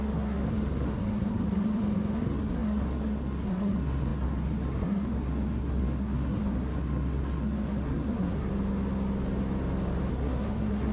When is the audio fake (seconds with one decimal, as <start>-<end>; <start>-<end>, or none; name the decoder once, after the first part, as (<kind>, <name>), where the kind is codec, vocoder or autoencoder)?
0.0-8.5 (codec, SNAC); 10.1-10.9